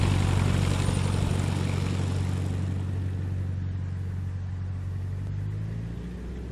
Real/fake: real